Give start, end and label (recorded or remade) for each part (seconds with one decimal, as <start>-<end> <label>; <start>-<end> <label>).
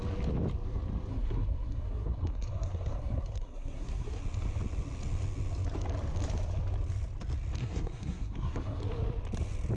0.0-1.1 recorded; 1.1-4.2 remade; 4.2-7.6 recorded; 7.6-8.8 remade; 8.8-9.8 recorded